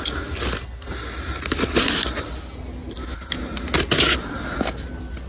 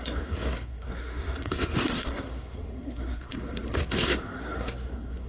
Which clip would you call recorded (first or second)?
first